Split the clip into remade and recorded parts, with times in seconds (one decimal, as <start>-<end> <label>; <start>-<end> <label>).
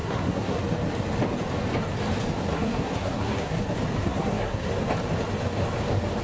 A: 0.0-0.6 remade; 0.6-2.5 recorded; 2.5-3.6 remade; 3.6-4.0 recorded; 4.0-4.7 remade; 4.7-6.2 recorded